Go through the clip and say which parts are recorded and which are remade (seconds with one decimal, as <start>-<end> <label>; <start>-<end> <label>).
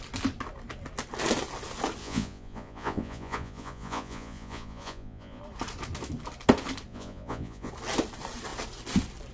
0.0-2.0 recorded; 2.0-5.4 remade; 5.4-6.9 recorded; 6.9-7.7 remade; 7.7-9.3 recorded